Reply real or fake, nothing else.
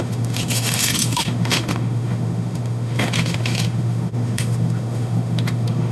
fake